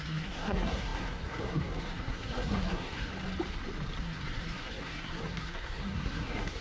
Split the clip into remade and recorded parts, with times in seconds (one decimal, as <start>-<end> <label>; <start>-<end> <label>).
0.0-3.1 remade; 3.1-4.0 recorded; 4.0-6.6 remade